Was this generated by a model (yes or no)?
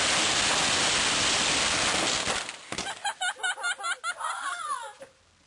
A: no